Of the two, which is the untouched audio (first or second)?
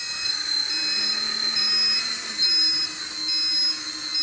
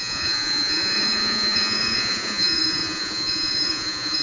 first